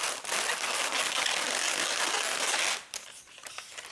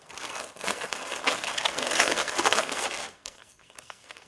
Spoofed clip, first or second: second